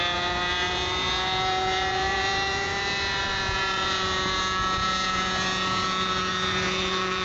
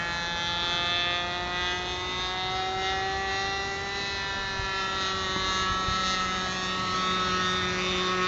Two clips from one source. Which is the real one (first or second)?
second